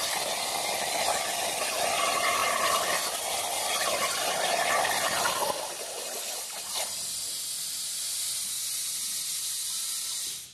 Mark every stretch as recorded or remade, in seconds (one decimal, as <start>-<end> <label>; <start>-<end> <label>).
0.0-10.5 recorded

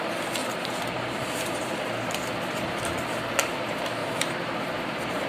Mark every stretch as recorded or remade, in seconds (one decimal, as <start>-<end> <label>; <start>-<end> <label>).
0.0-0.4 recorded; 0.4-1.7 remade; 1.7-4.0 recorded; 4.0-5.3 remade

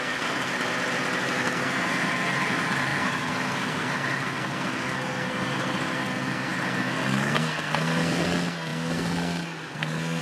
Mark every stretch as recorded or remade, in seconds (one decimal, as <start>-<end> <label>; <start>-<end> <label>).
0.0-0.5 remade; 0.5-1.2 recorded; 1.2-10.2 remade

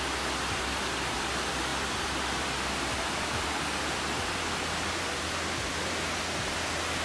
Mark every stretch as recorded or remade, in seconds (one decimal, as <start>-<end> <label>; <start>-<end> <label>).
0.0-1.7 recorded; 1.7-5.9 remade; 5.9-7.0 recorded

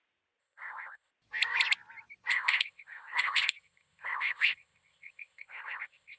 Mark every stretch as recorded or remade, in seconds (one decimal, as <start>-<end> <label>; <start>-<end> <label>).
0.0-0.4 recorded; 0.4-1.1 remade; 1.1-2.3 recorded; 2.3-6.2 remade

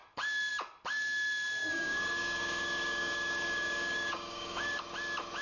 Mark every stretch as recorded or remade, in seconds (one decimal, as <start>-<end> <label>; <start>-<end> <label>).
0.0-1.6 recorded; 1.6-4.8 remade; 4.8-5.4 recorded

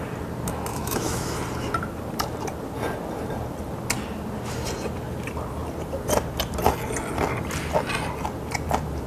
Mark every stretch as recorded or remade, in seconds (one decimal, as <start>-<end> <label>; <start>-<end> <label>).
0.0-0.7 recorded; 0.7-1.4 remade; 1.4-9.1 recorded

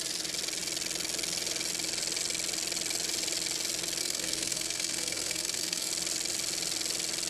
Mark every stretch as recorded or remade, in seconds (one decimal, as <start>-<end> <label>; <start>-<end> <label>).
0.0-4.0 recorded; 4.0-5.9 remade; 5.9-7.3 recorded